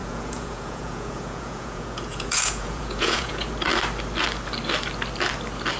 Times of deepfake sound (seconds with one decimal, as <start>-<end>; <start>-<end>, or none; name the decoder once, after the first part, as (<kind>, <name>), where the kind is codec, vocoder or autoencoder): 0.0-3.5 (vocoder, Vocos)